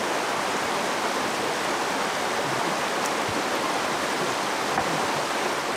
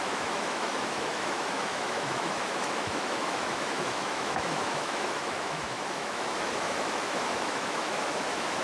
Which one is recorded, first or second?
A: first